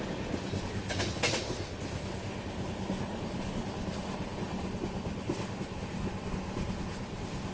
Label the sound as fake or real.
real